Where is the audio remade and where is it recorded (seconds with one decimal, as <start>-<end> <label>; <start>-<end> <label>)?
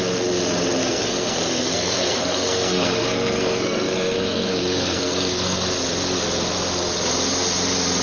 0.0-0.8 recorded; 0.8-5.6 remade; 5.6-8.0 recorded